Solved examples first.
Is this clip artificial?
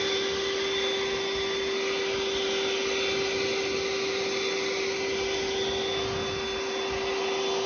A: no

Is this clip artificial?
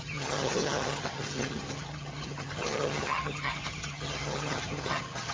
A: yes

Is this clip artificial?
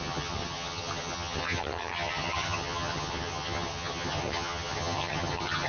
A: yes